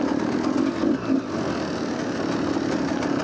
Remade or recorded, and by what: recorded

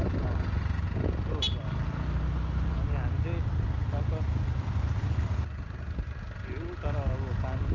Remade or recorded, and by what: recorded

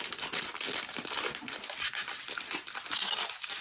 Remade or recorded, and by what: recorded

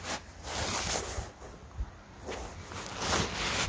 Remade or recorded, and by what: recorded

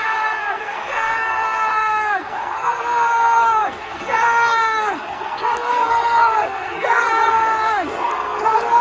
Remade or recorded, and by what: remade, codec, SNAC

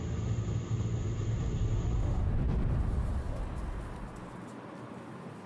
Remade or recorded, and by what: recorded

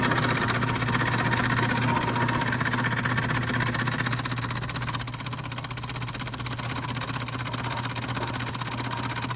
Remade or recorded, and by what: recorded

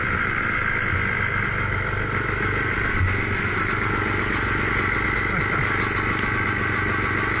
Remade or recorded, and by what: recorded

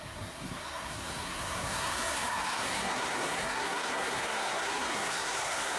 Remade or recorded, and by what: remade, codec, SNAC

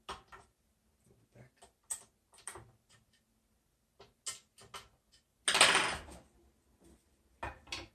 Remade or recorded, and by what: recorded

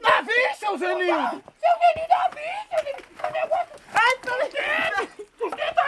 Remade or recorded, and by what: recorded